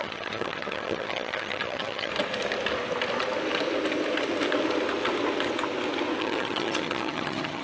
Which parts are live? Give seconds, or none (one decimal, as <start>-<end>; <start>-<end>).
2.1-6.2